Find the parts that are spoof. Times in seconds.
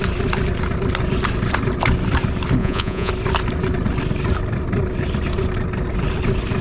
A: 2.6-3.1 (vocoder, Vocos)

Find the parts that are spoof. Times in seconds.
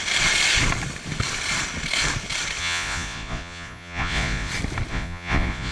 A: 2.6-4.5 (vocoder, Vocos); 4.9-5.7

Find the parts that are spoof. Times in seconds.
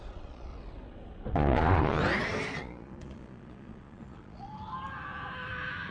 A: 0.0-0.5 (vocoder, Vocos); 1.3-2.0; 2.6-4.5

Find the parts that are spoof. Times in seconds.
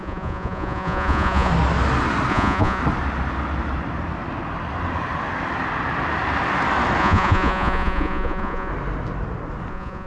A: 0.0-1.5 (vocoder, Vocos); 2.3-2.8; 7.0-8.7; 9.7-10.1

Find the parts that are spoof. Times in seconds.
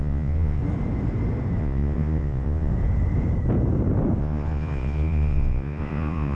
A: 0.0-0.6 (vocoder, Vocos); 1.6-2.7; 4.2-6.3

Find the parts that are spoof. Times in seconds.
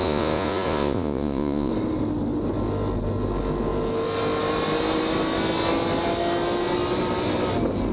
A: 0.0-1.7 (vocoder, Vocos)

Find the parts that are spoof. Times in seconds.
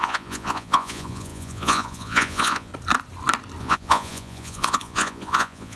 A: 0.0-2.7 (vocoder, Vocos); 3.6-5.8